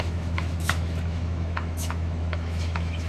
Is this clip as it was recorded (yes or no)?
no